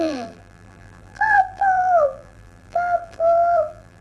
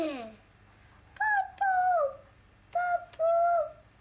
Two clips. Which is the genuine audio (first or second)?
second